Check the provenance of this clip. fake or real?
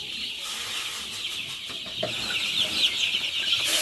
real